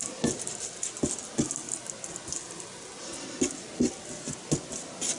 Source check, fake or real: real